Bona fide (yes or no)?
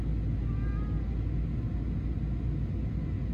yes